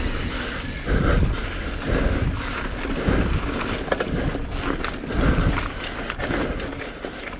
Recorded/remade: recorded